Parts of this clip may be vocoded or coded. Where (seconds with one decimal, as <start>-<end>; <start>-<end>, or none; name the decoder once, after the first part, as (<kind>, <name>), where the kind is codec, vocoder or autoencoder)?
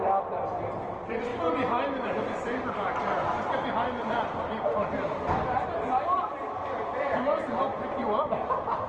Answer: 0.0-1.3 (vocoder, BigVGAN v2); 2.1-8.9